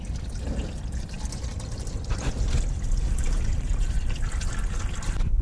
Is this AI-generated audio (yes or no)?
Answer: no